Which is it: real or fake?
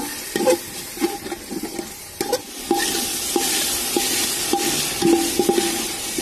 real